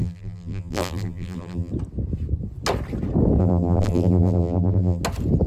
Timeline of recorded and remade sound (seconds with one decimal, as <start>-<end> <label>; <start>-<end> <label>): 0.0-1.7 remade; 1.7-3.4 recorded; 3.4-5.0 remade; 5.0-5.5 recorded